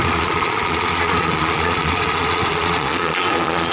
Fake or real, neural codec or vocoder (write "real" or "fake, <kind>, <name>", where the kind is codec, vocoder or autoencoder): fake, vocoder, Vocos